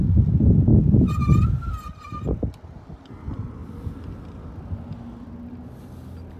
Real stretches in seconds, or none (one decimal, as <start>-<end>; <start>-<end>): 0.0-6.4